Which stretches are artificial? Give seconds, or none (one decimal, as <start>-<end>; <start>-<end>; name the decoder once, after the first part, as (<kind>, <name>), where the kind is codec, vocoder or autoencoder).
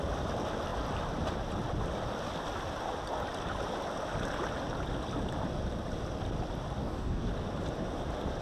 6.8-7.3 (codec, DAC)